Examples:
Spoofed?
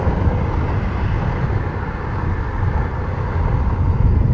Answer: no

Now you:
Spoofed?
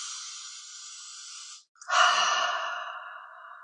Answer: no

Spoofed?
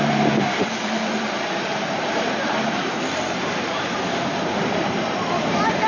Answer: yes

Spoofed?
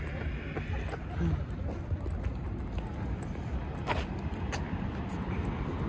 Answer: no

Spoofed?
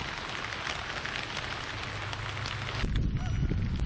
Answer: no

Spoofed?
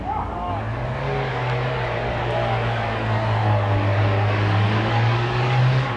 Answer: yes